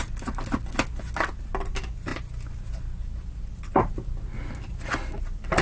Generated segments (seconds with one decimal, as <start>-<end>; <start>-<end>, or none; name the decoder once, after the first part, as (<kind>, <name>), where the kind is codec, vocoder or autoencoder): none